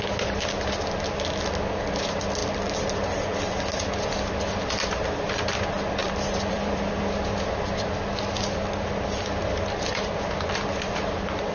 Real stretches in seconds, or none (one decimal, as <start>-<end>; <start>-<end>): 0.0-6.0; 7.0-11.5